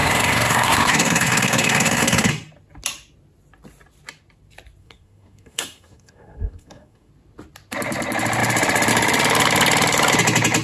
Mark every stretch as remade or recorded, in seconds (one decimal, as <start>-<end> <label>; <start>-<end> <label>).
0.0-2.3 remade; 2.3-4.8 recorded; 4.8-7.1 remade; 7.1-10.6 recorded